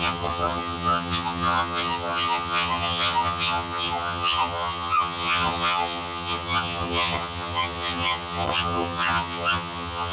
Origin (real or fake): fake